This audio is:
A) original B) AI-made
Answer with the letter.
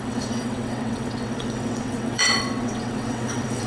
B